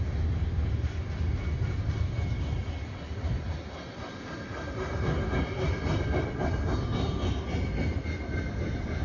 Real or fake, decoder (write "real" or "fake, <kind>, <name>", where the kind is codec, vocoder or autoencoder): real